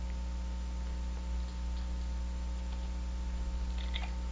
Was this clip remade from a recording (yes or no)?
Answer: no